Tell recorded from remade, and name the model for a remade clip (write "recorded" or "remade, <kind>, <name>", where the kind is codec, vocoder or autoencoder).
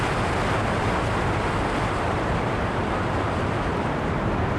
recorded